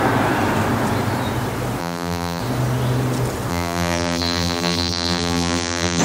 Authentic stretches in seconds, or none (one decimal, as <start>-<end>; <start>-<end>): 0.0-1.8; 2.4-3.5